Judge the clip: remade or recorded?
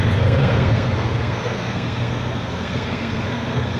remade